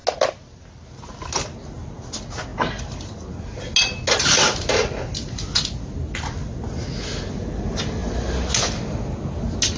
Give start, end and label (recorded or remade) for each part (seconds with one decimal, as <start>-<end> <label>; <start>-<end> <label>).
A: 0.0-9.8 recorded